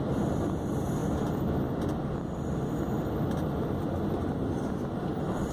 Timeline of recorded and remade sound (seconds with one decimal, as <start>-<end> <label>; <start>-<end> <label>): 0.0-1.0 remade; 1.0-4.3 recorded; 4.3-5.5 remade